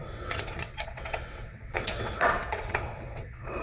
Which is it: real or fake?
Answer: fake